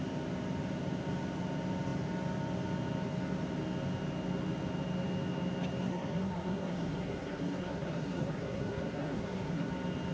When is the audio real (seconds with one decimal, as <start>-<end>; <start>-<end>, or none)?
0.0-5.8; 9.7-10.1